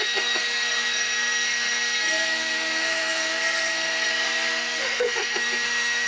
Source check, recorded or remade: remade